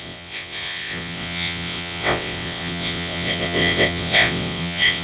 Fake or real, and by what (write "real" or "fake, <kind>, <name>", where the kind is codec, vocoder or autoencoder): fake, vocoder, WaveNeXt